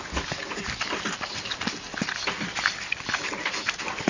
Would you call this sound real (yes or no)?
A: yes